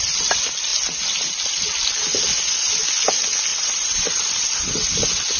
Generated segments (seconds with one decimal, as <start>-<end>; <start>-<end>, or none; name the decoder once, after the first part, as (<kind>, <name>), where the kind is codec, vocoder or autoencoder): 3.5-4.4 (vocoder, BigVGAN v2)